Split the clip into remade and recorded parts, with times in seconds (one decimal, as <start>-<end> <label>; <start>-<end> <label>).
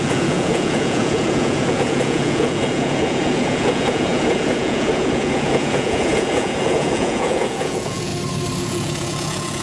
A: 0.0-8.1 remade; 8.1-8.6 recorded; 8.6-9.6 remade